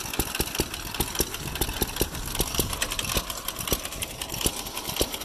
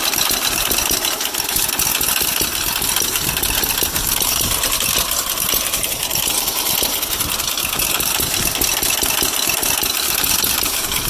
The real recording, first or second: first